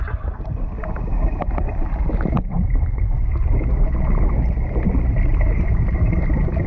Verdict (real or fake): real